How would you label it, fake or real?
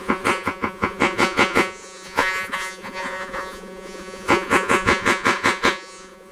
fake